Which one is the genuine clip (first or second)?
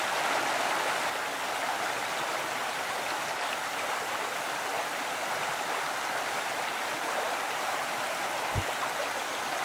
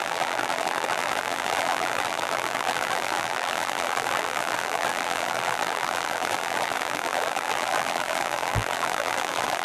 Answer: first